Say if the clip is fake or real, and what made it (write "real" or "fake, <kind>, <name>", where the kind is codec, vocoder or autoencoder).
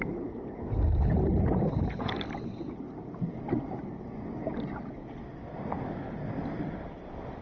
real